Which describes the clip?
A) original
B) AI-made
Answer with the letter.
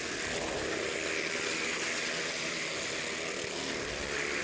A